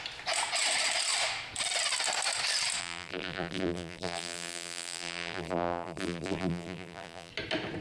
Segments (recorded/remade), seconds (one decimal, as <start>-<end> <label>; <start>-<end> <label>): 0.0-2.8 recorded; 2.8-7.3 remade; 7.3-7.8 recorded